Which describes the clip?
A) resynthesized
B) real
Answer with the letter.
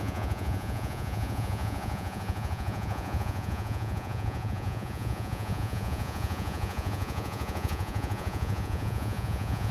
A